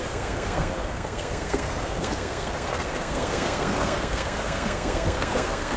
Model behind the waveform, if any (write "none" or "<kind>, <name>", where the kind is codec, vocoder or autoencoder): codec, SNAC